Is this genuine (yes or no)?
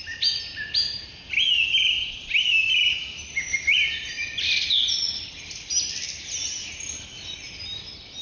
yes